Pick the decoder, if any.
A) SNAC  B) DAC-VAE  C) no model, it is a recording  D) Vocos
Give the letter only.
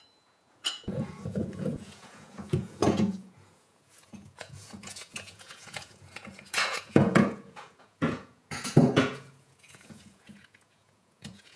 D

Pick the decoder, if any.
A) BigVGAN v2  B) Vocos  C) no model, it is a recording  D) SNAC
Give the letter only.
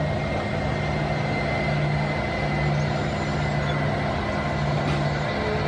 C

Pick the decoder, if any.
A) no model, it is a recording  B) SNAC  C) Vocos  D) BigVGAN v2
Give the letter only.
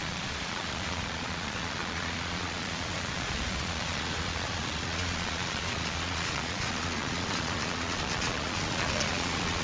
C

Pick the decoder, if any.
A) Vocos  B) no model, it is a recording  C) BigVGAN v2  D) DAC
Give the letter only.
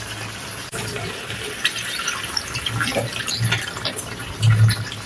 B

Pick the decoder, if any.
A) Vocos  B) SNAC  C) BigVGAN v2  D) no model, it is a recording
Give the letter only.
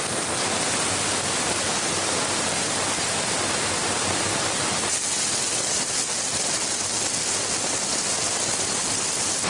D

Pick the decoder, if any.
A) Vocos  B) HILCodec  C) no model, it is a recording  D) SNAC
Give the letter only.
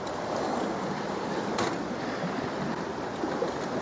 C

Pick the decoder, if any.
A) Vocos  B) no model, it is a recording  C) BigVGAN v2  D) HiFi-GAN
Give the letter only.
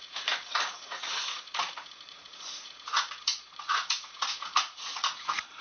A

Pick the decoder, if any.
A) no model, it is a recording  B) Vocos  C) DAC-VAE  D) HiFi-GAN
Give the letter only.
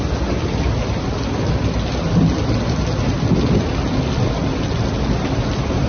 A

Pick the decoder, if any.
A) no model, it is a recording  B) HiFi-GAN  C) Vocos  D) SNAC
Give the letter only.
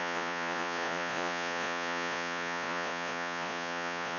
C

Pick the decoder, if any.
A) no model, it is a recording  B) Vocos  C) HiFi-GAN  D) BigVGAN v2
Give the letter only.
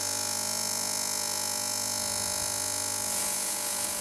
B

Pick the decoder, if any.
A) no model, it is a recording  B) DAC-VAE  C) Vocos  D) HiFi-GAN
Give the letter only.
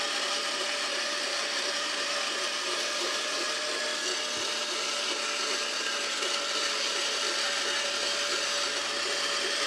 A